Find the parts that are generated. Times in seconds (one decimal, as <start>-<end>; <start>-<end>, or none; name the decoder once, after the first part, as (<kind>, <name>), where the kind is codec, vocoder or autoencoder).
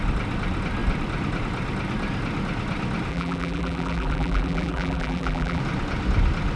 3.1-5.6 (vocoder, BigVGAN v2)